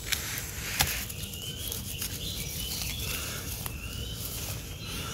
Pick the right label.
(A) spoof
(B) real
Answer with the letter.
B